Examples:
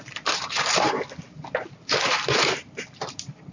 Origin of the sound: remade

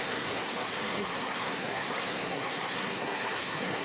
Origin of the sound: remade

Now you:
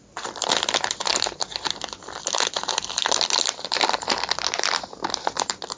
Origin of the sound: remade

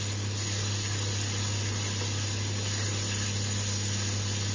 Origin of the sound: recorded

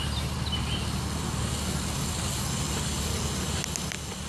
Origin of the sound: recorded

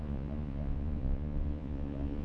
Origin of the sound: remade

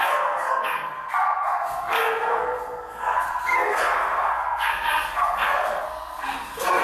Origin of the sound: remade